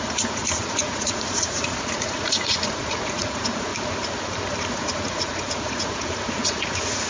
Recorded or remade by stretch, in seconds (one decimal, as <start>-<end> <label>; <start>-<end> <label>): 0.0-3.7 remade; 3.7-4.7 recorded; 4.7-7.1 remade